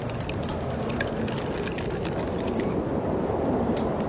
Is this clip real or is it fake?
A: real